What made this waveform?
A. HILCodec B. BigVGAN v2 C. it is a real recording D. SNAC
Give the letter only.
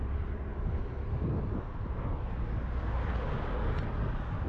C